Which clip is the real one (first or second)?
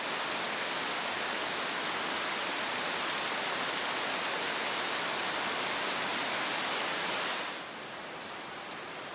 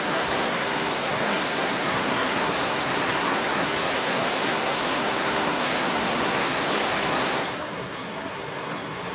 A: first